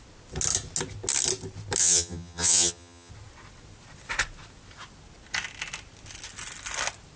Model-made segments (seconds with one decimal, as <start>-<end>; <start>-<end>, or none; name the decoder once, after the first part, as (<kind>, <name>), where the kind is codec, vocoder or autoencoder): 1.8-3.1 (vocoder, HiFi-GAN)